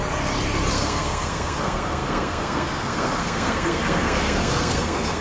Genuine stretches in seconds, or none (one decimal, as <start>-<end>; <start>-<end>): 0.0-0.7